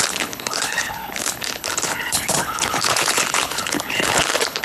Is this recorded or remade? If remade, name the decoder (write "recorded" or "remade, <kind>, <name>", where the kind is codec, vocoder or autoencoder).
remade, codec, HILCodec